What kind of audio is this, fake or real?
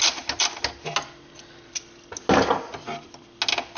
real